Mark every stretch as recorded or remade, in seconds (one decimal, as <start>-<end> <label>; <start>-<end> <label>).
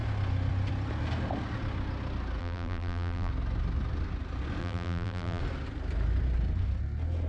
0.0-2.4 recorded; 2.4-3.3 remade; 3.3-4.6 recorded; 4.6-5.4 remade; 5.4-7.3 recorded